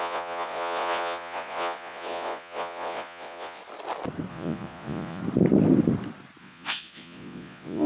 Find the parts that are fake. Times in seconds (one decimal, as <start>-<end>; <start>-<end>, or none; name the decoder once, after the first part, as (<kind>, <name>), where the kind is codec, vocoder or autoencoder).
0.0-3.6 (vocoder, Vocos); 4.3-5.2; 6.4-7.9